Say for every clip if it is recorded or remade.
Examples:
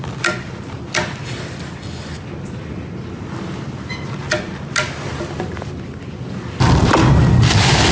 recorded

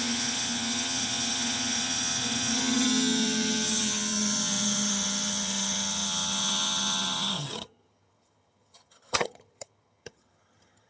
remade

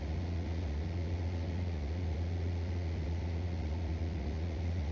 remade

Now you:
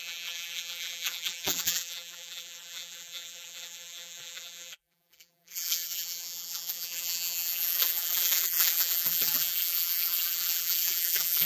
remade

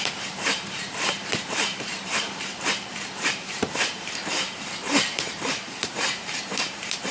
remade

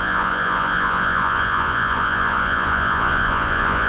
remade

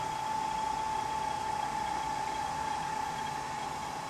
recorded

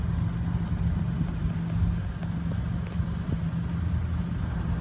recorded